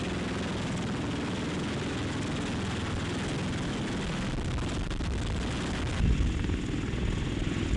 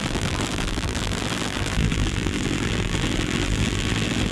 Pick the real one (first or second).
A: first